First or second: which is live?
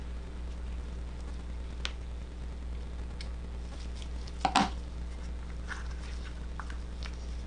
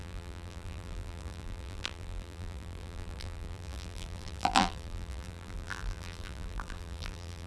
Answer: first